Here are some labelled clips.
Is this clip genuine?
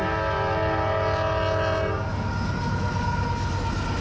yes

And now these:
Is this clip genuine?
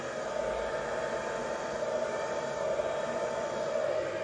yes